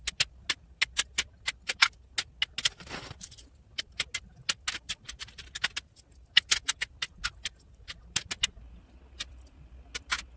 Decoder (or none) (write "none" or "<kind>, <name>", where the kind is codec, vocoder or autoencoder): none